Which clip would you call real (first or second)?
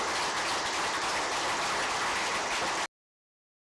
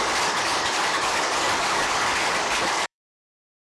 first